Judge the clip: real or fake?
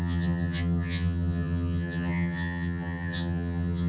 fake